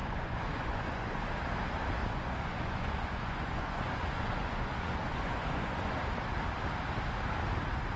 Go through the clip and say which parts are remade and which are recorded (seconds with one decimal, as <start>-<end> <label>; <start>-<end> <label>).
0.0-1.4 remade; 1.4-2.0 recorded; 2.0-6.0 remade; 6.0-8.0 recorded